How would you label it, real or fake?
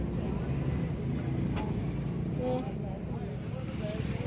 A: real